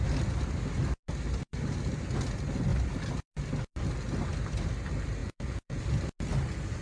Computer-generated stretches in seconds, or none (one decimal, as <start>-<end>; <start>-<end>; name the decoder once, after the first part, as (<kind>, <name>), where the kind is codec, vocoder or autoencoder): 5.2-5.8 (vocoder, Vocos)